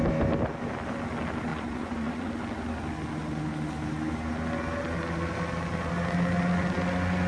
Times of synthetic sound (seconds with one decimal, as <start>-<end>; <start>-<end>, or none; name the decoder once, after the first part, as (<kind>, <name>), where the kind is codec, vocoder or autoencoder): 1.5-2.3 (vocoder, Vocos)